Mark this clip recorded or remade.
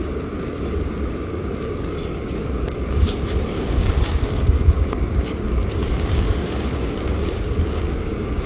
remade